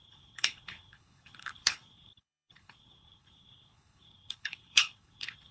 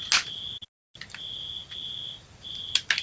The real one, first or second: second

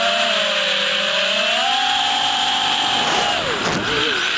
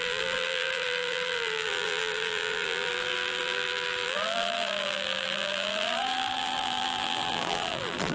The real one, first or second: first